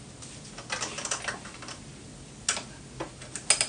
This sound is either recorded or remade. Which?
recorded